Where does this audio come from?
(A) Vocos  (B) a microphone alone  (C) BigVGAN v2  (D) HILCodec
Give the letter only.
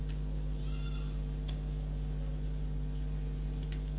B